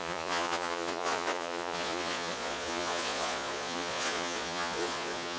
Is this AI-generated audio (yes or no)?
yes